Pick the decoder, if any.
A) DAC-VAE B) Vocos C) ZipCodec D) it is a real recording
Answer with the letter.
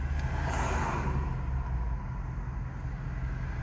D